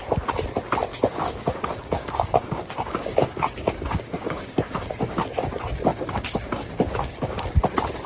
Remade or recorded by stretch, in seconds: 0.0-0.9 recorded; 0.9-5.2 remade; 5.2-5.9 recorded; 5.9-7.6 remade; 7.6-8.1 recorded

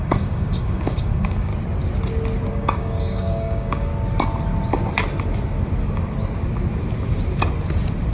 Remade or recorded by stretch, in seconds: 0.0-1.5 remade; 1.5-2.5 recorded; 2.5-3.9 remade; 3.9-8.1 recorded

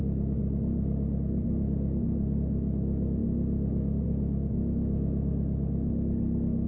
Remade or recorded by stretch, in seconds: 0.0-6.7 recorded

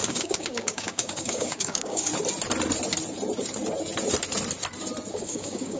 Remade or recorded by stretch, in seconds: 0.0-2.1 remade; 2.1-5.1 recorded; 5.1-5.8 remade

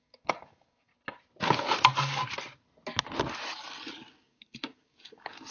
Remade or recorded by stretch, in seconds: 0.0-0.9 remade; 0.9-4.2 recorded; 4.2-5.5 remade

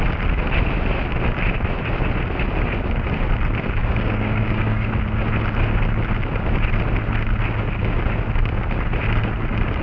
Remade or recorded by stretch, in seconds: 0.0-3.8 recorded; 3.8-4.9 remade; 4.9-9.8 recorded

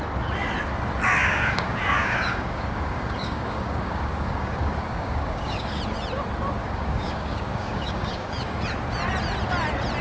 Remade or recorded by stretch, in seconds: 0.0-1.2 recorded; 1.2-5.8 remade; 5.8-6.6 recorded; 6.6-8.6 remade; 8.6-10.0 recorded

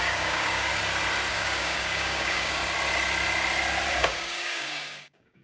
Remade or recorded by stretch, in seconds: 0.0-0.7 remade; 0.7-1.3 recorded; 1.3-2.6 remade; 2.6-3.9 recorded; 3.9-5.4 remade